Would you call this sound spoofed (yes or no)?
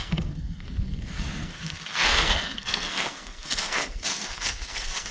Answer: yes